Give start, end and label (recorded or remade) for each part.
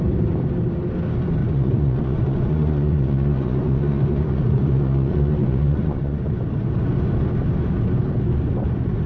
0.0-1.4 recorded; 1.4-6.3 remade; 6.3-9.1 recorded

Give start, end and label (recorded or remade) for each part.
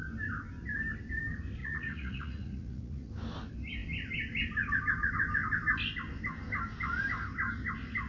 0.0-1.6 recorded; 1.6-3.1 remade; 3.1-8.1 recorded